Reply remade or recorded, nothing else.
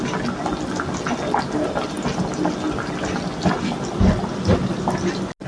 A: recorded